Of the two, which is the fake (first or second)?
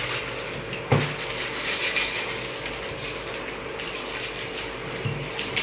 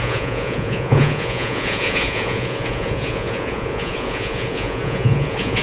second